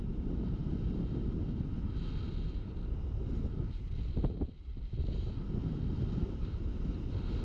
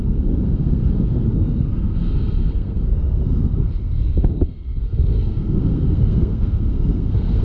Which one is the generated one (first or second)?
second